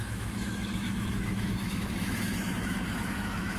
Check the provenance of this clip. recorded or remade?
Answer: remade